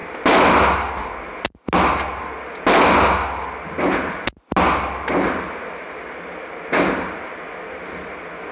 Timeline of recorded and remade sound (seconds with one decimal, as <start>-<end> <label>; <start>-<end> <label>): 0.0-8.5 recorded

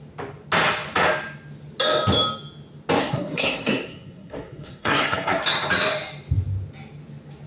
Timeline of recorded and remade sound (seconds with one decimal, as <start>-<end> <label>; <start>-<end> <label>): 0.0-3.0 recorded; 3.0-5.4 remade; 5.4-7.5 recorded